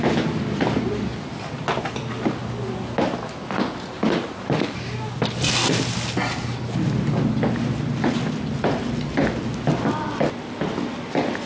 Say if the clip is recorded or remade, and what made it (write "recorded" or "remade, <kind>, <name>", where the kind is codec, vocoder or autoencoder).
recorded